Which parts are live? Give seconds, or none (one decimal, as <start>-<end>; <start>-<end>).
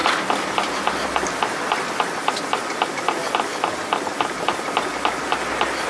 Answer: 0.0-5.9